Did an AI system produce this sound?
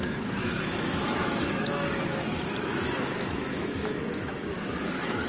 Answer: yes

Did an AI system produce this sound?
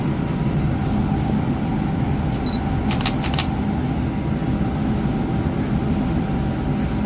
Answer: no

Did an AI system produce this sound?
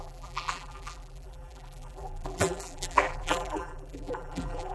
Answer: yes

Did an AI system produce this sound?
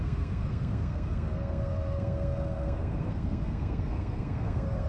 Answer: yes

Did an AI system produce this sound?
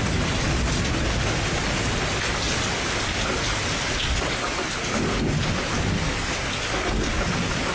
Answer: no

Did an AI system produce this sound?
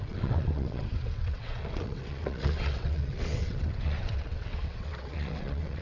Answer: yes